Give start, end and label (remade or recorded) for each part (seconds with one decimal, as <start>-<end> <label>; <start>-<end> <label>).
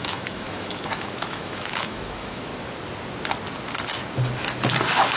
0.0-2.5 remade; 2.5-5.2 recorded